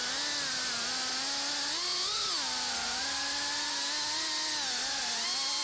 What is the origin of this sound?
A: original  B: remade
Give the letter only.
A